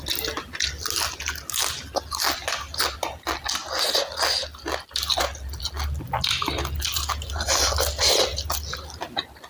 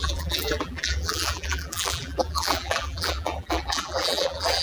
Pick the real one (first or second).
first